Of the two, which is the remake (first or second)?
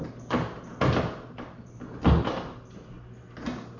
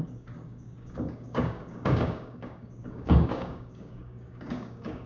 second